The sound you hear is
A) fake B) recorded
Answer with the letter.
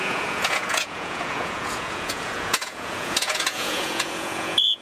A